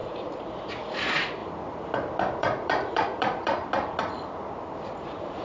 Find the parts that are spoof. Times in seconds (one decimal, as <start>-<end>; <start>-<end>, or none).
0.0-1.4; 2.4-3.6; 4.8-5.4